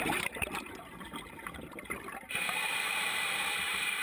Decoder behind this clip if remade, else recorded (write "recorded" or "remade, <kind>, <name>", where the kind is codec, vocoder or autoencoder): remade, vocoder, BigVGAN v2